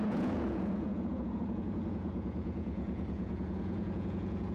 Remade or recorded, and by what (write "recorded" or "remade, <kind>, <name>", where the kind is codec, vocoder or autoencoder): remade, vocoder, Vocos